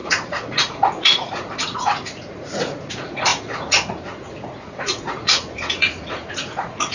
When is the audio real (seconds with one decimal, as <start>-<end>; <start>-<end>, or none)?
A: none